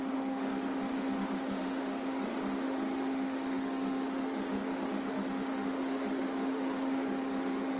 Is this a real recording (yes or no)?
no